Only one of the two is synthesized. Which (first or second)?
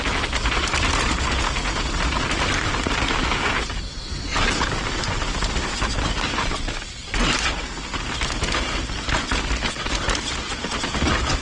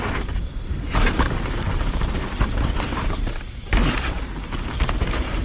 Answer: second